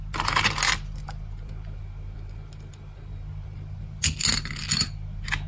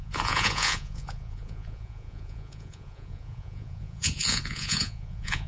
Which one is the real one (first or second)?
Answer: first